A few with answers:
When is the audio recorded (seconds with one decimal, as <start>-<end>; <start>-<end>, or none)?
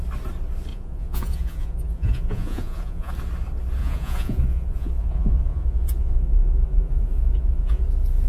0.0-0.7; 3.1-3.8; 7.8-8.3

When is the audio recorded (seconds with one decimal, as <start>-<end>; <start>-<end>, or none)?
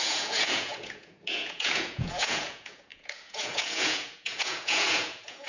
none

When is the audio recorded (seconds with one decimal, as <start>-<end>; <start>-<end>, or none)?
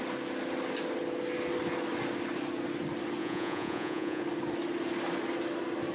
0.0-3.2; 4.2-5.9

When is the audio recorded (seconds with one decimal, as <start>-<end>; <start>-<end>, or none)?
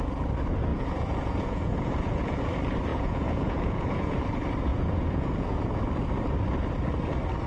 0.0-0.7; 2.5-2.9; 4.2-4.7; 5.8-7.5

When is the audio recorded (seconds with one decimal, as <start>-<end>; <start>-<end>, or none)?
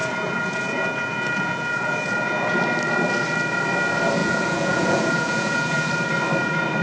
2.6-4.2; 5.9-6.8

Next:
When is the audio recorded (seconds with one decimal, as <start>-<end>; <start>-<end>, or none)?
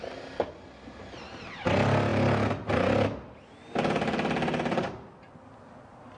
0.0-6.2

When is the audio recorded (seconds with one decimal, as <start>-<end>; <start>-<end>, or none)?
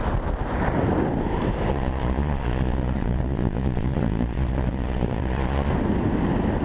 0.0-1.7; 5.7-6.6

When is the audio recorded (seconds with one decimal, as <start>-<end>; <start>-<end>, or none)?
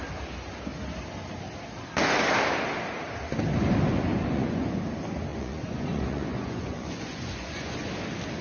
0.0-4.1; 4.8-5.3; 7.9-8.4